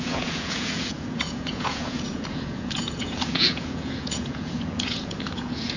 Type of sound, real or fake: fake